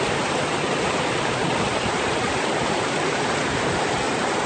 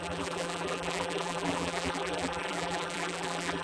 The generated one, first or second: second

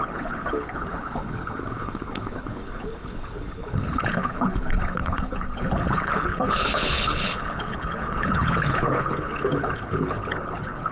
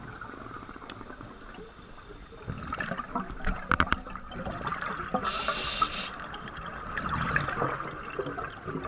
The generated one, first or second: first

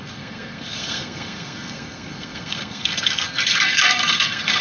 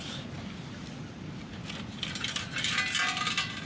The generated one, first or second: first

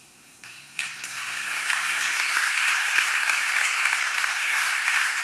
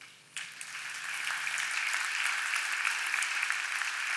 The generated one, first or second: first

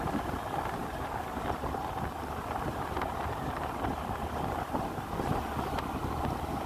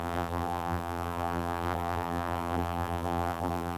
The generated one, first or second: second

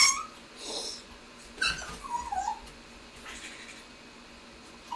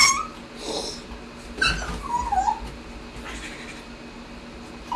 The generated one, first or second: first